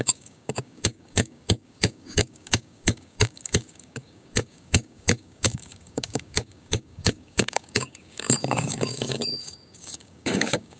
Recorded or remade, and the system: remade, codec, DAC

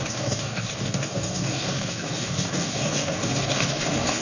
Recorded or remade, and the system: remade, codec, DAC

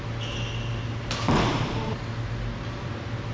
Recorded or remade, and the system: recorded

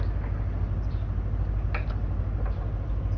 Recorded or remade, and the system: recorded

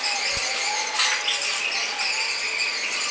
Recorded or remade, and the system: recorded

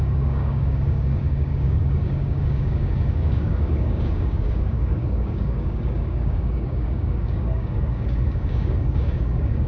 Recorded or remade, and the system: remade, codec, DAC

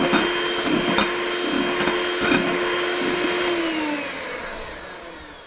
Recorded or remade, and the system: recorded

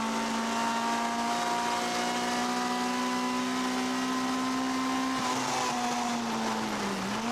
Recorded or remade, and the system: recorded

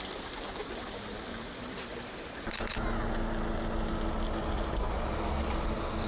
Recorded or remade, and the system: recorded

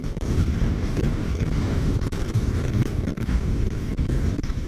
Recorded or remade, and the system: remade, codec, DAC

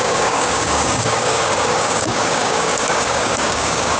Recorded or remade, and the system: remade, codec, DAC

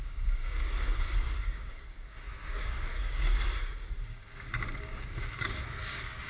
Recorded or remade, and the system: remade, codec, DAC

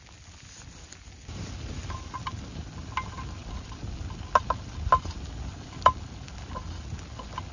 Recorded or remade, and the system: recorded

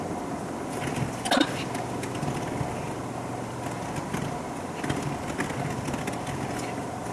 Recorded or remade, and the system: recorded